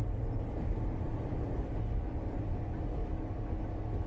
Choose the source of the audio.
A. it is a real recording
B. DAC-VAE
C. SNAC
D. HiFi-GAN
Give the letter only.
A